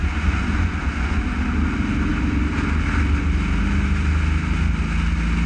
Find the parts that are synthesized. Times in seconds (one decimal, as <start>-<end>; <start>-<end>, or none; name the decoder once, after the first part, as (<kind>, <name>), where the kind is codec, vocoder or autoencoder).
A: 0.0-1.2 (vocoder, Vocos)